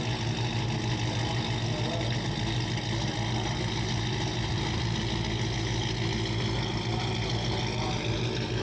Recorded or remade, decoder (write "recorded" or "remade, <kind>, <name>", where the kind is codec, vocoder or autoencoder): recorded